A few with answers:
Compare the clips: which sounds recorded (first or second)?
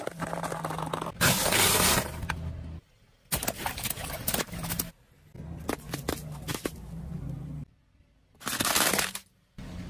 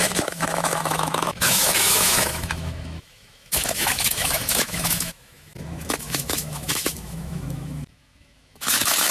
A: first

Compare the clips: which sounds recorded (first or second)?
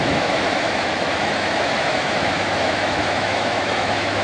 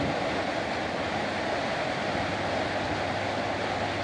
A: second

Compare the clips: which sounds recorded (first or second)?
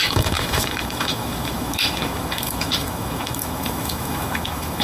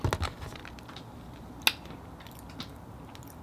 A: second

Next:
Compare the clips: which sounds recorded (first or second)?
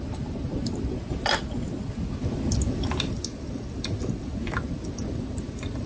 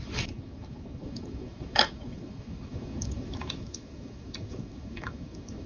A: first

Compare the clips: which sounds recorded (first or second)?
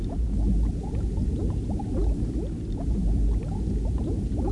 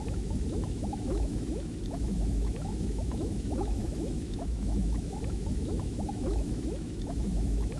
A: first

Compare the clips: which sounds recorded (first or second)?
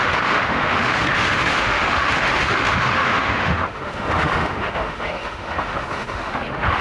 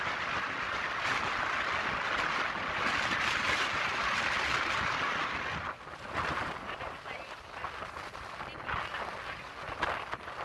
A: second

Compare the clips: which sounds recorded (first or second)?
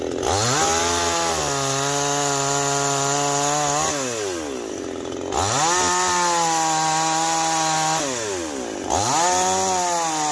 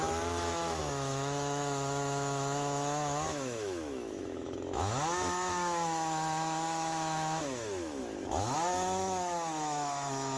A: first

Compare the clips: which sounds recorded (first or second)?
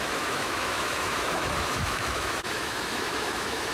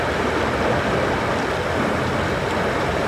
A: second